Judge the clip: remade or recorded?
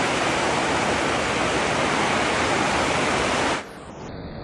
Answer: recorded